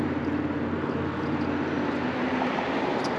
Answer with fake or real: real